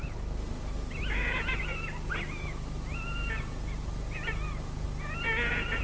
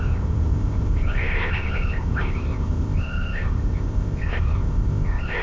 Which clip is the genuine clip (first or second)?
first